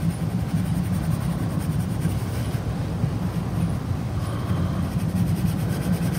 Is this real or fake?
fake